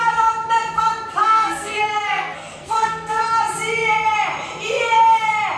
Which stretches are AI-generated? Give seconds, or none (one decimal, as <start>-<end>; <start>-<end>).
1.2-3.2